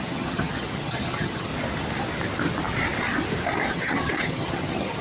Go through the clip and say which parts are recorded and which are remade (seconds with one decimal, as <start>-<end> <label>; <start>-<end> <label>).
0.0-1.5 remade; 1.5-3.7 recorded; 3.7-5.0 remade